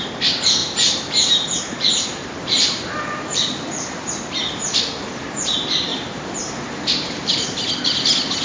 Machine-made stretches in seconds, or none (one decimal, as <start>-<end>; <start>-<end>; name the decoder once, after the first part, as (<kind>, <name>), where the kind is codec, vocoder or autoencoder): 0.6-4.1 (vocoder, BigVGAN v2); 5.9-7.3